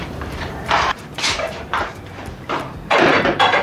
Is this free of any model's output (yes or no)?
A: no